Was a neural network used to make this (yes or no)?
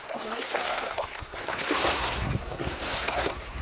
yes